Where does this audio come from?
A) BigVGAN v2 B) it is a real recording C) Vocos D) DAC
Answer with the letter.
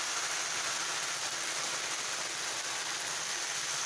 B